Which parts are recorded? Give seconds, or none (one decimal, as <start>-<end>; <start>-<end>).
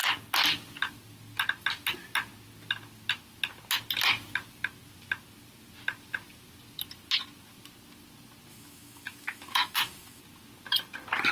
0.0-8.5; 10.2-11.3